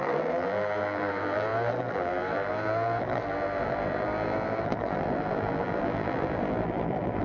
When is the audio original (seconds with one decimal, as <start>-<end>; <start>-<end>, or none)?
none